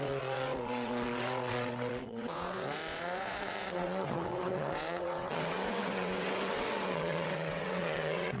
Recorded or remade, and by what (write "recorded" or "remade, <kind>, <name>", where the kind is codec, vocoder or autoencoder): remade, vocoder, WaveNeXt